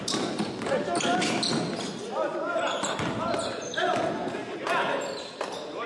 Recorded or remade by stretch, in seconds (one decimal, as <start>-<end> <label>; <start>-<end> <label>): 0.0-5.9 recorded